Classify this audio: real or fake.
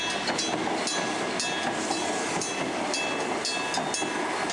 real